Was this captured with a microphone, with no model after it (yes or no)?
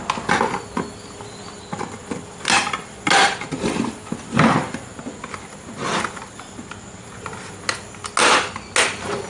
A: yes